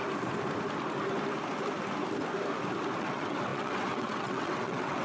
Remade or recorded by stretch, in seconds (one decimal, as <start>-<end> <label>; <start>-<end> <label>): 0.0-3.0 recorded; 3.0-5.0 remade

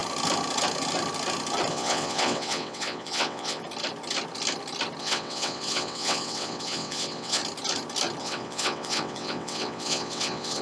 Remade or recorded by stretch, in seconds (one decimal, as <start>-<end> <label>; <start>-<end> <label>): 0.0-1.7 recorded; 1.7-3.6 remade; 3.6-5.0 recorded; 5.0-7.4 remade; 7.4-8.2 recorded; 8.2-10.6 remade

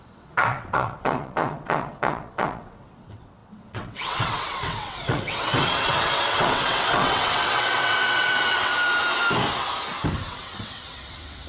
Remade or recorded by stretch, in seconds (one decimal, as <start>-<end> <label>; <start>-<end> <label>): 0.0-8.7 remade; 8.7-10.3 recorded; 10.3-11.5 remade